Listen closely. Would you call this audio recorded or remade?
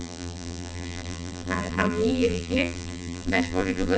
remade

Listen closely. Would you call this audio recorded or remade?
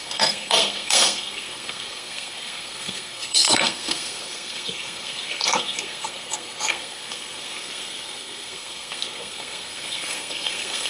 remade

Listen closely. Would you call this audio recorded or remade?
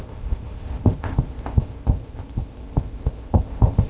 remade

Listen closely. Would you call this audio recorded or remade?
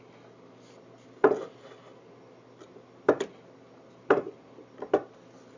recorded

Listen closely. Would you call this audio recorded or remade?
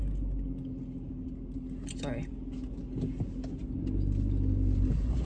recorded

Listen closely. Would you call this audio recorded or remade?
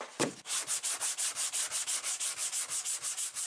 recorded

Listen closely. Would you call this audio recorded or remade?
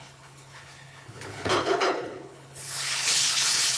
remade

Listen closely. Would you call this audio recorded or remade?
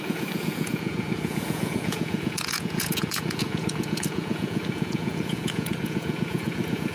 remade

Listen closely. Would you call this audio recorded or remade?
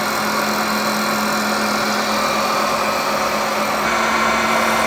recorded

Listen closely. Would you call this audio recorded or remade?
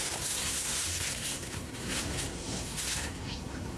remade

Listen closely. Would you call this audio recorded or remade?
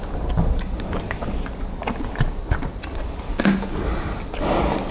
recorded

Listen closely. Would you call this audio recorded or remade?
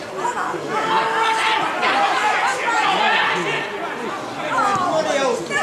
recorded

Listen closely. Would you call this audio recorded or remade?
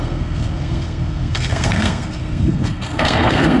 remade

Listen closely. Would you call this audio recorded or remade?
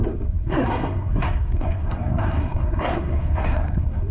remade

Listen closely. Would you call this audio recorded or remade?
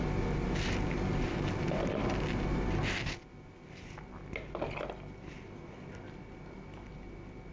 recorded